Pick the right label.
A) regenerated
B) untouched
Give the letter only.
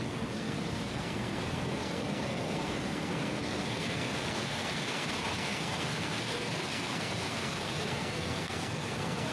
A